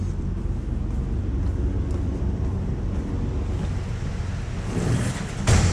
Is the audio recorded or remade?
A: recorded